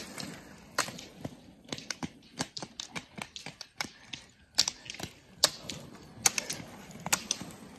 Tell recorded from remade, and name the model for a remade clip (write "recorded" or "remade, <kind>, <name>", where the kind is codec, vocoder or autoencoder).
recorded